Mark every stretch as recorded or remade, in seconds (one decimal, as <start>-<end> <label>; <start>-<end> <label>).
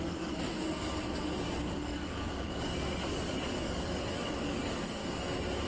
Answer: 0.0-5.0 remade; 5.0-5.7 recorded